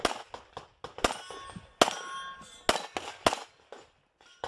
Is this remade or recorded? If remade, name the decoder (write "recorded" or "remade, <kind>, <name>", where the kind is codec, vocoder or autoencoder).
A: recorded